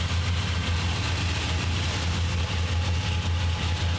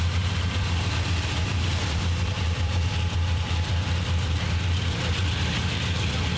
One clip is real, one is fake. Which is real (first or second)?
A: first